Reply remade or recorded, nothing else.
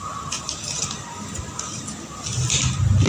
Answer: recorded